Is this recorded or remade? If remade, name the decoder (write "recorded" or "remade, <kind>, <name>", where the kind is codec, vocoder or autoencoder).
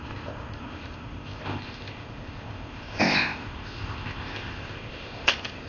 remade, codec, ZipCodec